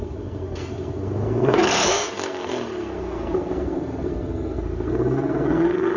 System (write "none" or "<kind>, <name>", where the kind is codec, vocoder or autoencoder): codec, SNAC